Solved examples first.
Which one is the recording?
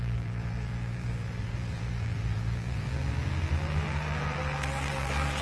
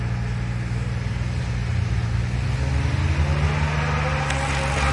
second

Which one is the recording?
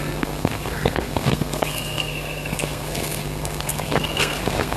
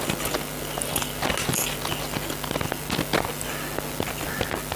second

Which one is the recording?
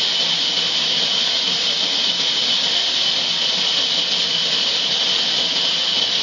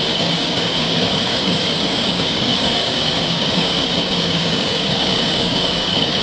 first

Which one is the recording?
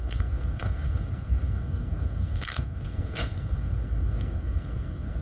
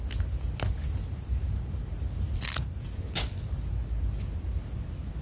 second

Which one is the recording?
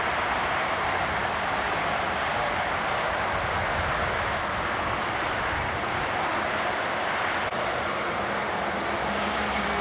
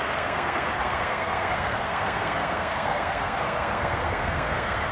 first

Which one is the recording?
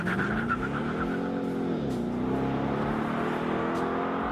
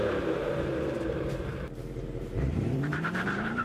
first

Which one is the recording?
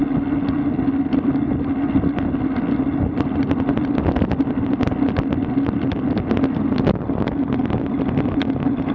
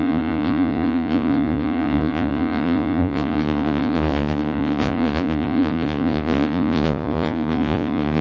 first